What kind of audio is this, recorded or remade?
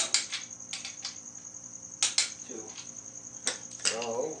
recorded